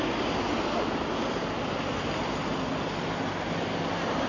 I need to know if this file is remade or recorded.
recorded